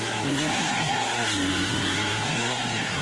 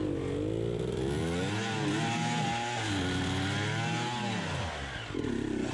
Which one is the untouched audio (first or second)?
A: second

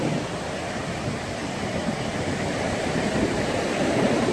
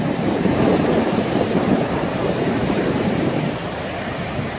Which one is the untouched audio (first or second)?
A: first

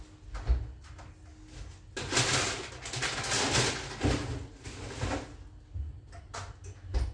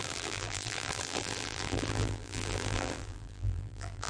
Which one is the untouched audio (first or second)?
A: first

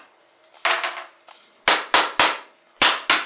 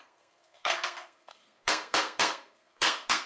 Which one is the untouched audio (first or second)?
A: first